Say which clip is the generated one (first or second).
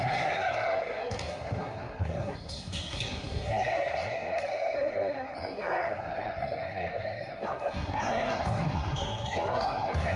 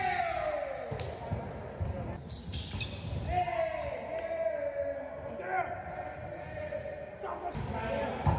first